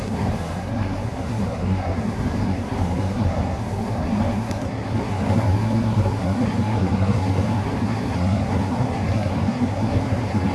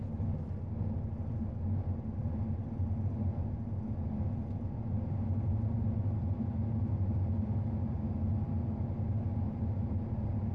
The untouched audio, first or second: second